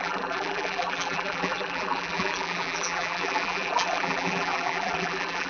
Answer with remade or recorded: remade